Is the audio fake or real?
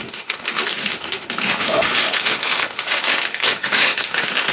fake